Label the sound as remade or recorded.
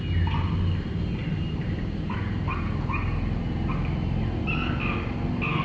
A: recorded